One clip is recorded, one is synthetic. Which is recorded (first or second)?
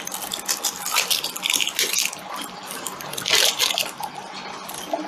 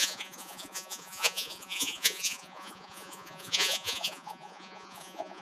first